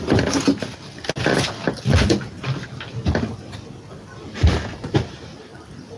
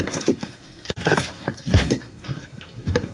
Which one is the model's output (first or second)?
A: second